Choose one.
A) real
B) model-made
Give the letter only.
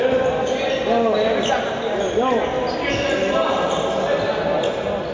A